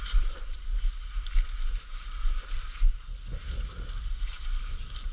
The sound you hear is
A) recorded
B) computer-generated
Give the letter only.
A